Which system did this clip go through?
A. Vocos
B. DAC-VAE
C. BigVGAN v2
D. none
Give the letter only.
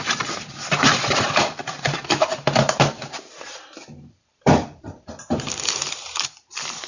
C